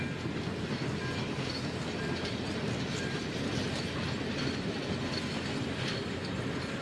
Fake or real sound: real